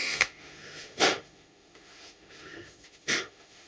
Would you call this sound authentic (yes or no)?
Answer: no